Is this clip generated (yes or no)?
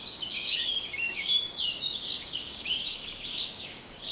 yes